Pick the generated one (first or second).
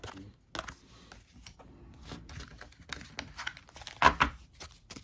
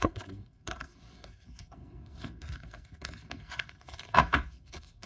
second